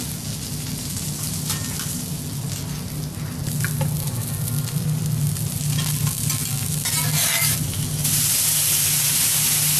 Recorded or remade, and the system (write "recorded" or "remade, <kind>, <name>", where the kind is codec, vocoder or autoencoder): recorded